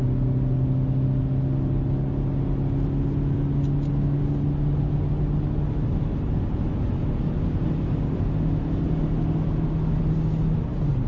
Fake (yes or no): no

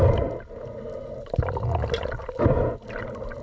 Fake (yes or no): no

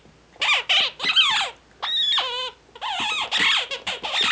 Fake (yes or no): no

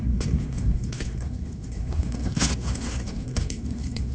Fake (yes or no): yes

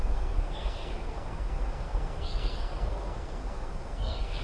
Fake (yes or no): yes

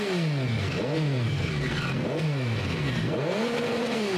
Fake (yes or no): yes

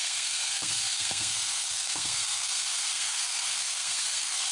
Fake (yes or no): yes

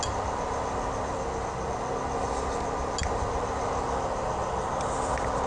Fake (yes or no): no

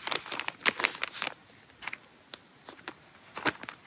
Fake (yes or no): no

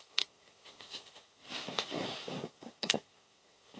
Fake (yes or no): yes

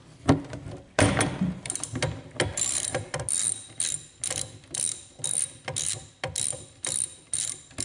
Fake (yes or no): no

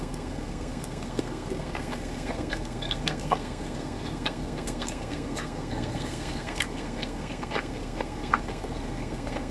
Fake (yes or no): yes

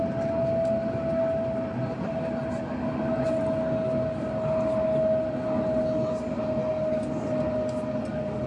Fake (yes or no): no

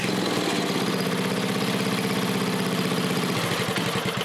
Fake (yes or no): no